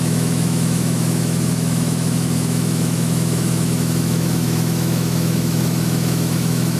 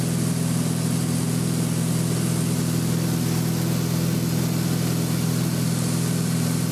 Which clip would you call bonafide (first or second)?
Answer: second